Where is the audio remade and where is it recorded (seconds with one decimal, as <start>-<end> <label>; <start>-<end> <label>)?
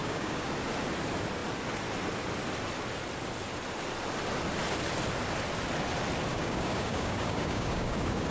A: 0.0-0.5 remade; 0.5-6.3 recorded; 6.3-8.3 remade